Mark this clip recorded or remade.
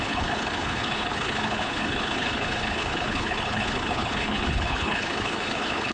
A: remade